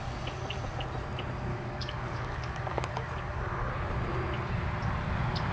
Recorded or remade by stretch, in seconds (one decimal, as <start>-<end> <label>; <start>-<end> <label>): 0.0-1.5 recorded; 1.5-3.7 remade; 3.7-5.5 recorded